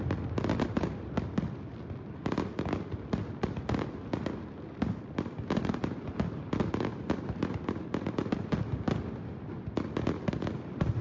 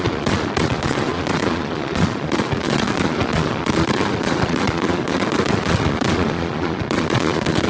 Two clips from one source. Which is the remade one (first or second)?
second